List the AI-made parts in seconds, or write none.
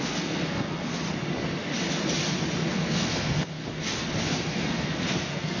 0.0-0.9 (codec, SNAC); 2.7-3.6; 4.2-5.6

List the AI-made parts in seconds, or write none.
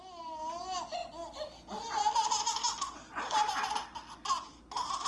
none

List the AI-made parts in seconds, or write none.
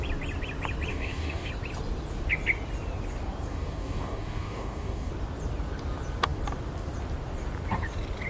0.9-1.5 (codec, DAC); 3.5-5.1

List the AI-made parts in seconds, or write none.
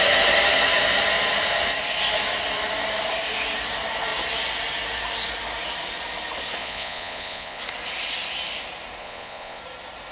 6.6-7.6 (vocoder, Vocos); 9.0-9.6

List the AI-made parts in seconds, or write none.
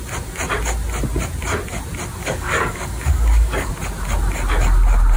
2.2-3.7 (codec, DAC)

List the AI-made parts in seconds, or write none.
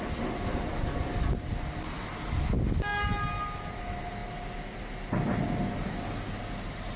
none